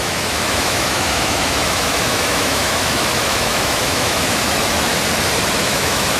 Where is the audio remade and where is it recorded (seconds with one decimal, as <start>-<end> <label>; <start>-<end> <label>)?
0.0-4.9 remade; 4.9-5.6 recorded; 5.6-6.2 remade